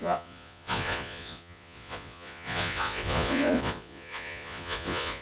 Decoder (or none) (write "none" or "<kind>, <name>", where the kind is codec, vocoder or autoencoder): vocoder, Vocos